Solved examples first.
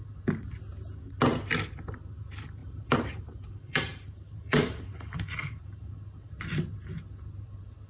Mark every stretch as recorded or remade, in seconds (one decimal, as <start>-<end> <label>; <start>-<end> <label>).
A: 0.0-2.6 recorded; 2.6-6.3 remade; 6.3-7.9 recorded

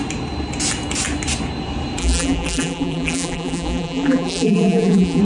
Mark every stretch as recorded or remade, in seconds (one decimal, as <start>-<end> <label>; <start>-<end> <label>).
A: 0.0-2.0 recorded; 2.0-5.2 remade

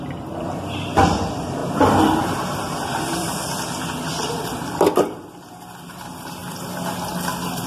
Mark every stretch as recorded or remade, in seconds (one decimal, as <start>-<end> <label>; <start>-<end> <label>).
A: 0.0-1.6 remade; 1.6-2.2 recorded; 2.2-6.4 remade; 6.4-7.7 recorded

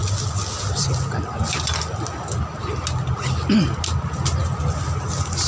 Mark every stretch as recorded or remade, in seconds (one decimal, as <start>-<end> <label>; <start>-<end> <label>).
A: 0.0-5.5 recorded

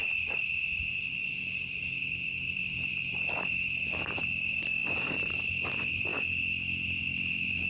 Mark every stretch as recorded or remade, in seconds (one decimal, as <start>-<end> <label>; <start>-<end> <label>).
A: 0.0-6.1 remade; 6.1-7.0 recorded; 7.0-7.7 remade

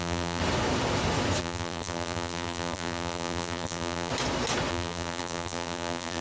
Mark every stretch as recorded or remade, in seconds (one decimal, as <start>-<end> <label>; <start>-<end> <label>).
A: 0.0-0.4 remade; 0.4-1.4 recorded; 1.4-4.1 remade; 4.1-4.7 recorded; 4.7-6.2 remade

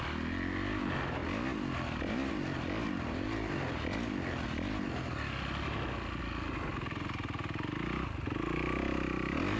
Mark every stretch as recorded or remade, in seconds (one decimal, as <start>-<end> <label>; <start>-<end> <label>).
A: 0.0-9.6 recorded